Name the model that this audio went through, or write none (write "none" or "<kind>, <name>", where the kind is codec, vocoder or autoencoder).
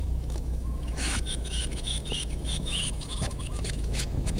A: autoencoder, DAC-VAE